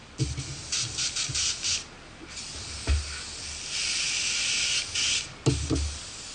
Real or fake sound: real